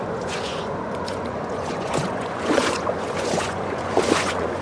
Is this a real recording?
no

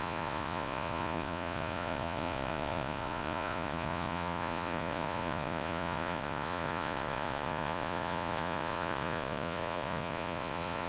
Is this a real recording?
no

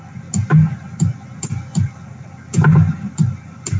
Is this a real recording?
yes